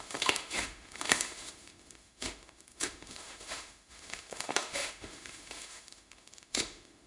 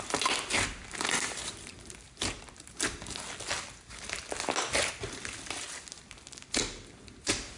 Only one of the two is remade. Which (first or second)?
first